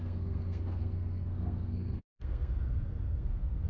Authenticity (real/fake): fake